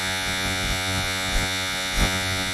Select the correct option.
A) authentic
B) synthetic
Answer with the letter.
B